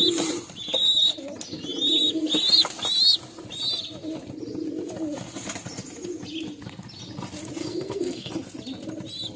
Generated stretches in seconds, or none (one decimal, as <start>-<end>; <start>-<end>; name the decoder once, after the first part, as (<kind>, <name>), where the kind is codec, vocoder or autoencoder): 7.6-8.3 (codec, SNAC)